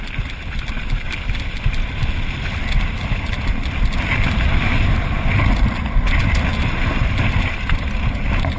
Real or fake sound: real